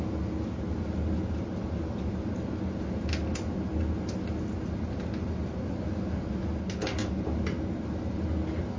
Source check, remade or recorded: recorded